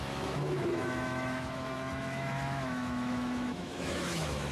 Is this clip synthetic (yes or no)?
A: yes